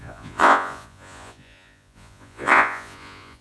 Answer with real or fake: fake